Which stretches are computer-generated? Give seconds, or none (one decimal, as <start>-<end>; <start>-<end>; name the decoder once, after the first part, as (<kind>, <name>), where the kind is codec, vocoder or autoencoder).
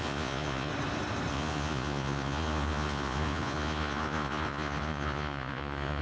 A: 0.0-0.7 (vocoder, Vocos); 1.3-6.0